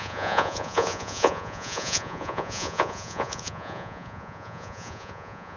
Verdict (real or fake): fake